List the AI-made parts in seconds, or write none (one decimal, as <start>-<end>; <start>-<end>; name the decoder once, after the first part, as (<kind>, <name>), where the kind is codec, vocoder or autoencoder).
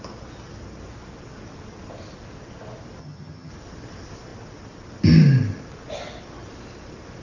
3.0-3.5 (vocoder, HiFi-GAN)